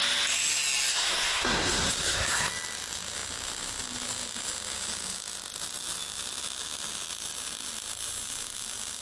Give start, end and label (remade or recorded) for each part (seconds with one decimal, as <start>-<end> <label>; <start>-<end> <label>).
0.0-0.9 recorded; 0.9-2.5 remade; 2.5-9.0 recorded